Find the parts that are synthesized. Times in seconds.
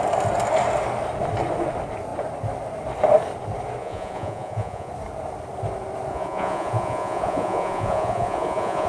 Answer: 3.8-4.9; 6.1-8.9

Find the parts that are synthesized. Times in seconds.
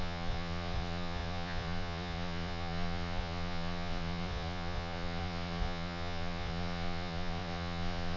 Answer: 0.0-8.2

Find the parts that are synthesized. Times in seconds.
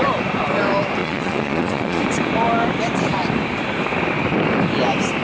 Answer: 1.0-2.0